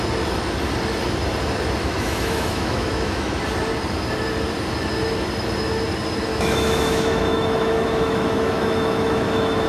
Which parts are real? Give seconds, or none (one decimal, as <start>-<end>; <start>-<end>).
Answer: 0.0-1.8; 3.3-6.3